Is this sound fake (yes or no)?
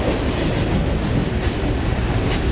no